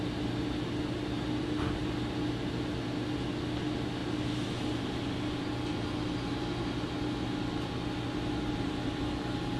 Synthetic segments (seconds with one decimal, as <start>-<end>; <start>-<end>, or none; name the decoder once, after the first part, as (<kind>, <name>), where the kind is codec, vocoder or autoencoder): none